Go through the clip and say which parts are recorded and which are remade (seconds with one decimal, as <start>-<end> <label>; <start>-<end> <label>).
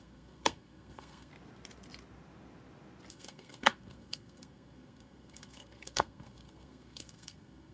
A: 0.0-1.3 remade; 1.3-3.1 recorded; 3.1-7.7 remade